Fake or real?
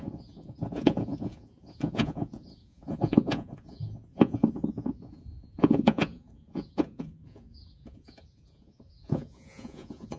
fake